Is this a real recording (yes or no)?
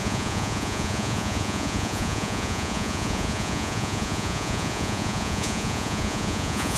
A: no